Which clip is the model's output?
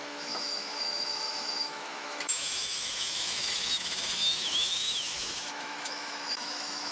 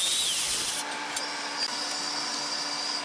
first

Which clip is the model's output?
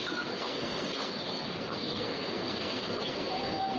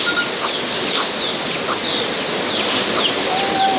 first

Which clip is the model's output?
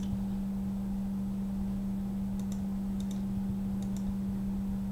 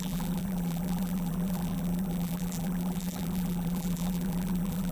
second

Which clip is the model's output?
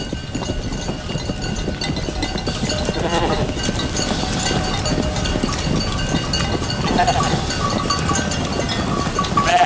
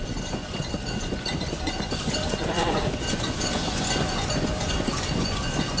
second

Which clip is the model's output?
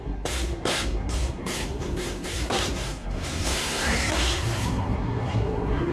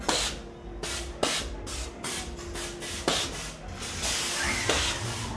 first